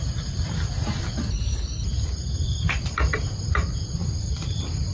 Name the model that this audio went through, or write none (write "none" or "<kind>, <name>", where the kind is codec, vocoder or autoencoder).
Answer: vocoder, BigVGAN v2